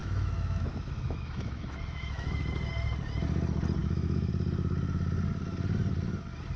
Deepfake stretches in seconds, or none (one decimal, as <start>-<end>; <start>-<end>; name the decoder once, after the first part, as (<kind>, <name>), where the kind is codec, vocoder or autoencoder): 0.0-2.4 (autoencoder, DAC-VAE); 3.8-4.3